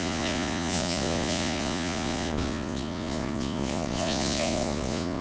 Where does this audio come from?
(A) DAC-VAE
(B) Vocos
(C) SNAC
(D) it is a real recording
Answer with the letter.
B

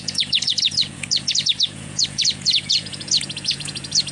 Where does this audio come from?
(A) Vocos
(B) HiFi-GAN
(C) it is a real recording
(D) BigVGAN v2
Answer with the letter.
A